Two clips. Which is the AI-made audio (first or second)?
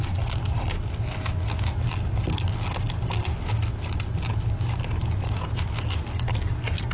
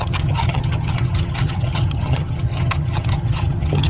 second